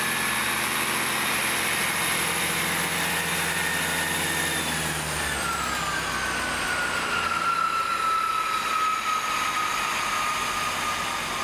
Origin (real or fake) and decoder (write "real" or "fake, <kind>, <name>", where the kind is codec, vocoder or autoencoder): real